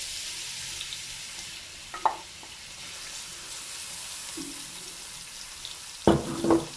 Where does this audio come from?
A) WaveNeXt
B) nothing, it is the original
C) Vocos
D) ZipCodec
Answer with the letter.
B